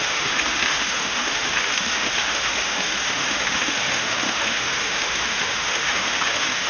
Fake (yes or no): yes